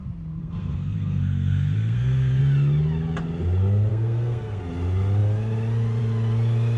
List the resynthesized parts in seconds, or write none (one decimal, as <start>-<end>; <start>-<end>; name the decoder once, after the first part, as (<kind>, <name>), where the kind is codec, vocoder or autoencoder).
0.4-2.4 (codec, SNAC); 3.9-4.6